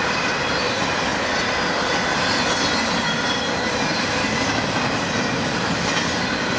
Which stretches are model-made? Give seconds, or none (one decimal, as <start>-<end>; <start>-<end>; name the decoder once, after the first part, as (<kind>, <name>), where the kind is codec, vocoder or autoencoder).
none

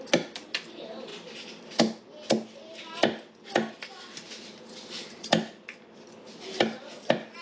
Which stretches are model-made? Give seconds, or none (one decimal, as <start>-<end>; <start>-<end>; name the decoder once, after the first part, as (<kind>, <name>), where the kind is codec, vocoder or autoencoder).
none

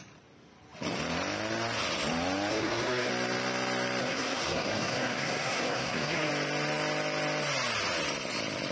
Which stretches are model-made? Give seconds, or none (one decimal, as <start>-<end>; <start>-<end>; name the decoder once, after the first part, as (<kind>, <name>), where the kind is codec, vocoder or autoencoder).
2.5-3.1 (codec, SNAC); 4.0-6.3

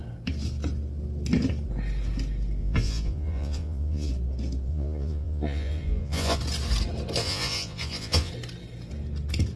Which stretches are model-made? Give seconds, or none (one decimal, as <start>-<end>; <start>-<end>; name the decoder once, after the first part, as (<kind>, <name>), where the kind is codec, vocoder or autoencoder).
2.6-4.1 (vocoder, Vocos); 4.7-6.4; 7.2-8.3

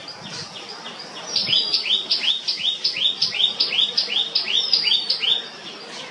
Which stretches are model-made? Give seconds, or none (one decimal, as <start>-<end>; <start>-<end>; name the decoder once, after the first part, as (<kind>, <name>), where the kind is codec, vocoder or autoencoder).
0.0-6.1 (vocoder, BigVGAN v2)

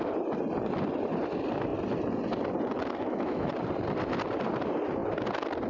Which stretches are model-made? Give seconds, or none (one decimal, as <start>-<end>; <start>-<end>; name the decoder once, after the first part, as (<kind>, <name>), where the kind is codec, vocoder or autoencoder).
3.0-3.5 (autoencoder, DAC-VAE)